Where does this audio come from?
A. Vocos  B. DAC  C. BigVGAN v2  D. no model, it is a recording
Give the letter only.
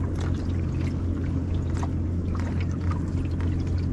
D